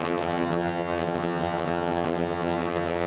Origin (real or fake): fake